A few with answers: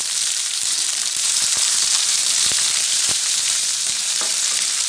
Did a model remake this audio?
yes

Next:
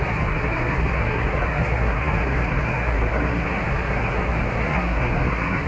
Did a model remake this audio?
yes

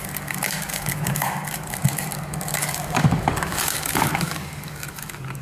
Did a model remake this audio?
yes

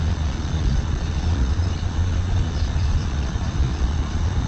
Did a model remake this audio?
yes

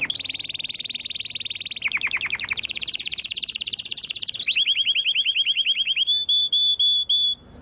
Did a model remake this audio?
no